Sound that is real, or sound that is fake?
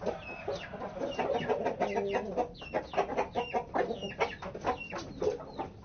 real